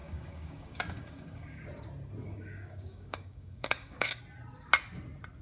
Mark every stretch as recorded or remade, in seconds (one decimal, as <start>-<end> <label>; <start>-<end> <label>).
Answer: 0.0-1.6 remade; 1.6-2.2 recorded; 2.2-4.2 remade; 4.2-5.4 recorded